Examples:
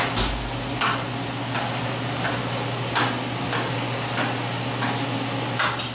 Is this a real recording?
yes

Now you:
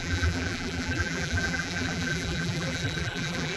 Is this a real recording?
no